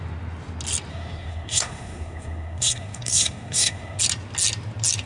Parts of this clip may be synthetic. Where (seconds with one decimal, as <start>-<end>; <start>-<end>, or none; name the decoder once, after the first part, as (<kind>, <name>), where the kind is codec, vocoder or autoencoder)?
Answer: 0.9-4.0 (codec, SNAC)